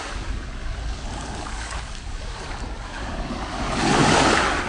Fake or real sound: fake